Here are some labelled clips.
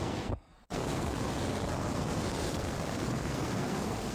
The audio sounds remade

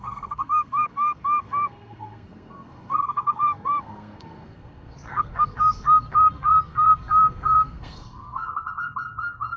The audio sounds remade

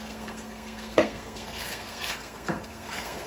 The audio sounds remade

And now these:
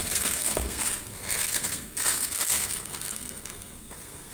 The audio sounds remade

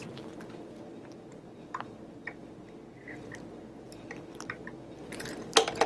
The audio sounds recorded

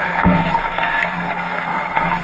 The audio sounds remade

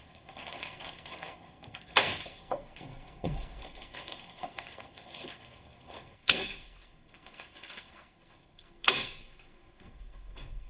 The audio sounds remade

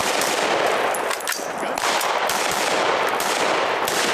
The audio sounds recorded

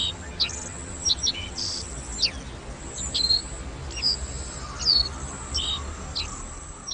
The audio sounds recorded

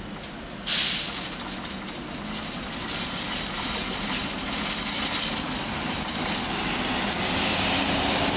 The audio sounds recorded